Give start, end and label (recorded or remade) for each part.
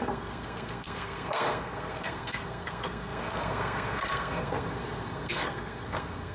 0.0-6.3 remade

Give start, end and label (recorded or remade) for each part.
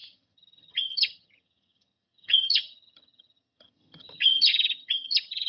0.0-5.5 remade